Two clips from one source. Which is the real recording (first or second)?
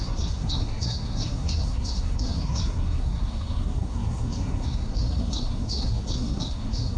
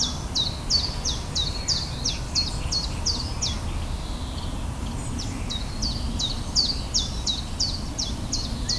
second